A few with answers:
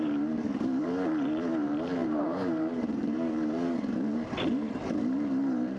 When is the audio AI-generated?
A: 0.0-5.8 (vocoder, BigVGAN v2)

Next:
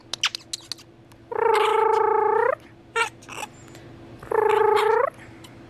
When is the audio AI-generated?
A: none

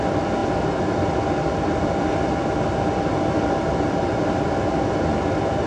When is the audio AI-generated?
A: none

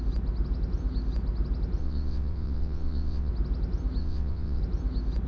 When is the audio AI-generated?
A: 1.8-3.3 (vocoder, WaveNeXt); 4.0-4.6

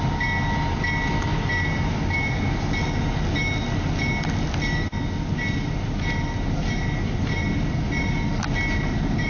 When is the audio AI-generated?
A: none